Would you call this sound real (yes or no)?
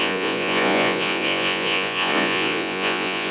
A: no